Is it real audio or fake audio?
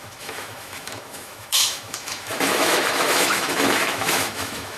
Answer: fake